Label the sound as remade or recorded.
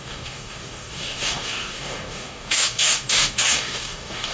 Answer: remade